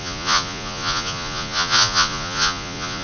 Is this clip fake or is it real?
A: fake